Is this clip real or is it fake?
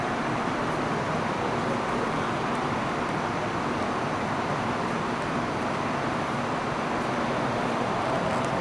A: fake